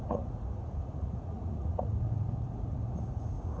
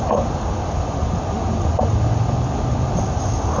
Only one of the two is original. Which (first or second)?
second